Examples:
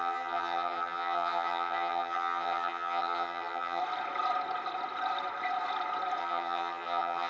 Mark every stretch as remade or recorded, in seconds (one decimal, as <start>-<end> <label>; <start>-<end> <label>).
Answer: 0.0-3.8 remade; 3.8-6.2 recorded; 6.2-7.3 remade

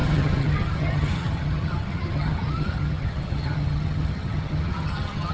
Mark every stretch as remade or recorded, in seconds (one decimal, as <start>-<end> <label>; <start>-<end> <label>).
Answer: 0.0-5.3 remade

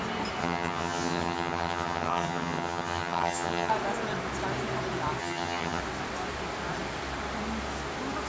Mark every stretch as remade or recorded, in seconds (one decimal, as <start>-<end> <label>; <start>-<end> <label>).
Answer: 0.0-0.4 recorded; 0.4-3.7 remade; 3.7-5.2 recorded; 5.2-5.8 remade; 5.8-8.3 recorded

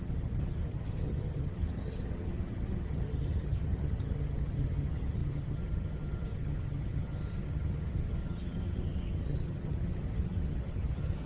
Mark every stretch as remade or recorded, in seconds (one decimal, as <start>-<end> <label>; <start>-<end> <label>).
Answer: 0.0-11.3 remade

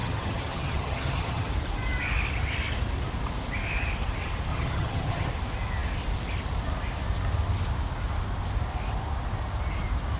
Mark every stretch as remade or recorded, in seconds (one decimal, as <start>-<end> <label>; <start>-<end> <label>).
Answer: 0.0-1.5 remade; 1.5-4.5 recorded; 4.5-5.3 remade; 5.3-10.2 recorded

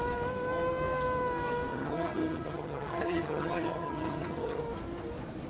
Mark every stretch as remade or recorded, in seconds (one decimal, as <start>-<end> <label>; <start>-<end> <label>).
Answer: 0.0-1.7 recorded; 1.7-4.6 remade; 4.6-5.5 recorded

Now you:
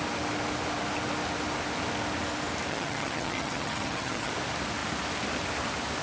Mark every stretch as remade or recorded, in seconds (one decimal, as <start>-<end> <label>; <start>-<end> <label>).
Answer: 0.0-2.7 recorded; 2.7-4.3 remade; 4.3-6.0 recorded

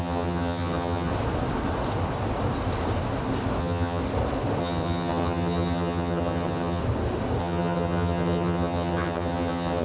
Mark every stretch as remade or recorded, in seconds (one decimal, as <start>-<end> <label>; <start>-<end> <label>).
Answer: 0.0-1.1 remade; 1.1-3.6 recorded; 3.6-4.0 remade; 4.0-4.6 recorded; 4.6-6.8 remade; 6.8-7.4 recorded; 7.4-9.8 remade